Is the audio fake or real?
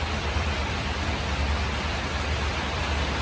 real